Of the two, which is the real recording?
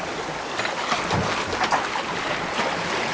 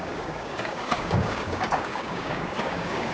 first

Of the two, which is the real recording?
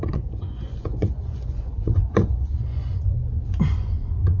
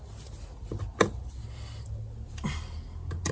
second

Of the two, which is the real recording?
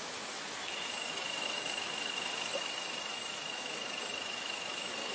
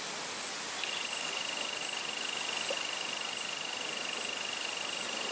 second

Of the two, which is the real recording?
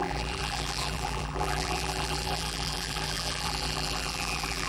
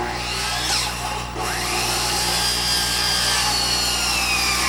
second